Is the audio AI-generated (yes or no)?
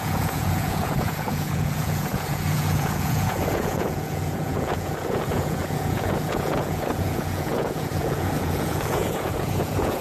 yes